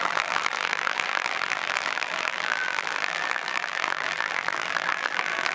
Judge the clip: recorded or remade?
remade